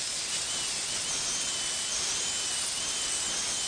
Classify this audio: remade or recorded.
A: recorded